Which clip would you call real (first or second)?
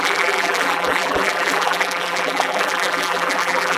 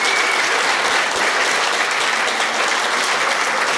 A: second